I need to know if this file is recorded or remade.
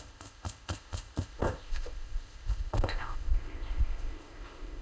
remade